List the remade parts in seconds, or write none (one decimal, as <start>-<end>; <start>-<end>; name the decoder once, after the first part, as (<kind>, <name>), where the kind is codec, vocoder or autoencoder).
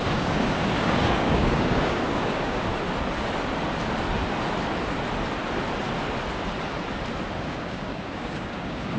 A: 0.0-2.7 (codec, DAC); 7.4-9.0